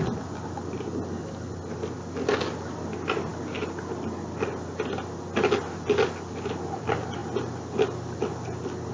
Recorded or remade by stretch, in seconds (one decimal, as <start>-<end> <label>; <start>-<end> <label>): 0.0-8.9 recorded